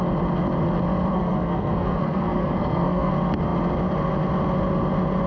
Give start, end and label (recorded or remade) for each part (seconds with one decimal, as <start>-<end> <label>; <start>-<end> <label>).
0.0-1.1 recorded; 1.1-3.1 remade; 3.1-5.3 recorded